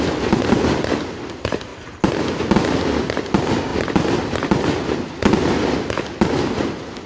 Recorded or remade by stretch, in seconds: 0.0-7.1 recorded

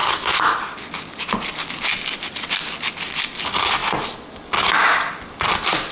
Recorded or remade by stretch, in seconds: 0.0-0.5 remade; 0.5-5.9 recorded

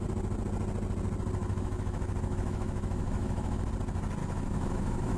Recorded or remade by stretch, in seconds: 0.0-1.4 recorded; 1.4-3.7 remade; 3.7-4.2 recorded; 4.2-5.2 remade

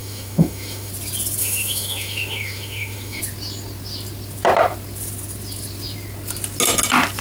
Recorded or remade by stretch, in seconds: 0.0-0.9 remade; 0.9-1.4 recorded; 1.4-3.2 remade; 3.2-7.2 recorded

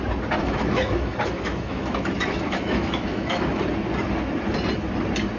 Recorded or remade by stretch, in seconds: 0.0-0.4 recorded; 0.4-3.6 remade; 3.6-5.4 recorded

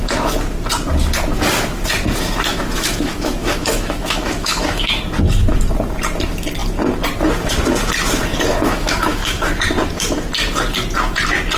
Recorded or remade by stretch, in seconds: 0.0-2.5 recorded; 2.5-5.0 remade; 5.0-8.5 recorded; 8.5-9.5 remade; 9.5-11.6 recorded

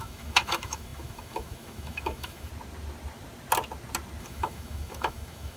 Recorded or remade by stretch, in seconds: 0.0-2.5 remade; 2.5-4.2 recorded; 4.2-5.6 remade